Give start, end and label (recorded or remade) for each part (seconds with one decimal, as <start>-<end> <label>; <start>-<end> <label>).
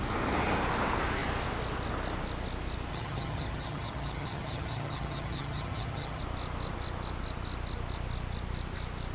0.0-2.9 recorded; 2.9-6.2 remade; 6.2-9.1 recorded